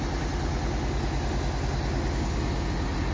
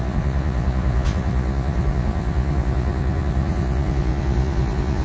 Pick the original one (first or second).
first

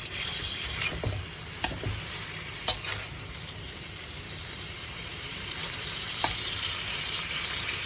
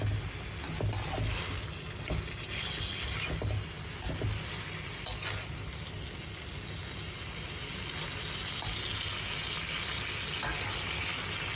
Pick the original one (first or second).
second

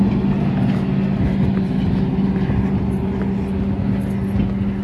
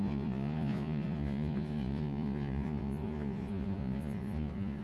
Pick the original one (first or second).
first